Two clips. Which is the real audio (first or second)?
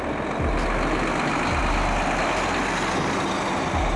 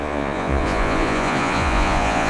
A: first